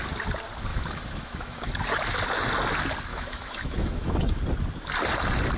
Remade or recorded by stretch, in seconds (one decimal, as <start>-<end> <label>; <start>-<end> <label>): 0.0-0.7 recorded; 0.7-1.7 remade; 1.7-3.1 recorded; 3.1-4.4 remade; 4.4-5.6 recorded